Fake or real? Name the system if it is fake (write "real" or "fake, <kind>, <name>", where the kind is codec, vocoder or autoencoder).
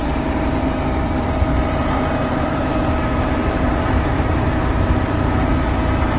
fake, vocoder, BigVGAN v2